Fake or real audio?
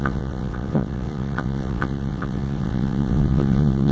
fake